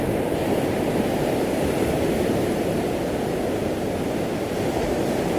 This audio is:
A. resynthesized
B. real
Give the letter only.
B